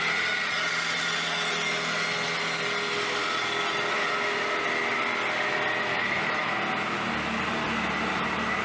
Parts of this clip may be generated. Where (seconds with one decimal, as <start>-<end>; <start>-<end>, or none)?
5.9-6.5